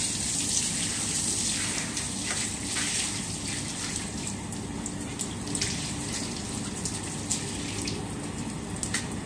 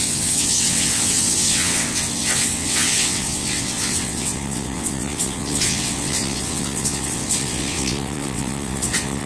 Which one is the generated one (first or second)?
second